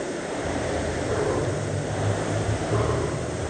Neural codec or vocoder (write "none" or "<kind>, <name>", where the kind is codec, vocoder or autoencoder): vocoder, BigVGAN v2